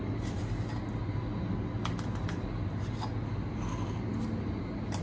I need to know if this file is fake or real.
real